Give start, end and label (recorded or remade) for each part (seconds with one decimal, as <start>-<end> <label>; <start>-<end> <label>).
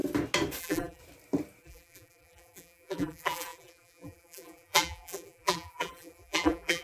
0.0-0.6 recorded; 0.6-1.0 remade; 1.0-1.6 recorded; 1.6-6.8 remade